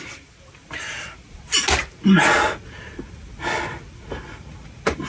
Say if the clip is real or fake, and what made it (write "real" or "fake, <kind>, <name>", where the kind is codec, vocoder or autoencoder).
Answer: real